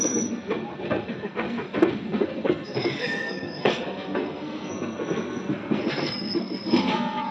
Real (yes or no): no